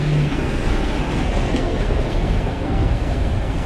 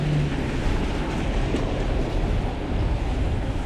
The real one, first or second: second